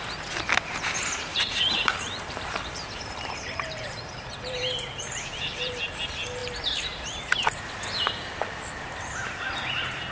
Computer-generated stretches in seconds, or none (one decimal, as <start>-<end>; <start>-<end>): 1.3-6.0